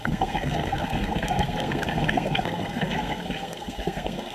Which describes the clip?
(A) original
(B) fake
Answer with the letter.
B